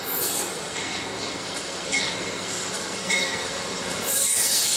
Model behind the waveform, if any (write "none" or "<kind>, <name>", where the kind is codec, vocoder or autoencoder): codec, SNAC